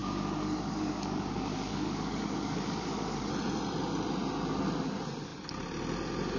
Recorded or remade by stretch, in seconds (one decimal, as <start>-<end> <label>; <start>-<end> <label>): 0.0-3.3 remade; 3.3-6.4 recorded